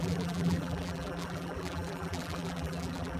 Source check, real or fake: fake